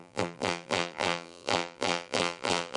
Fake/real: fake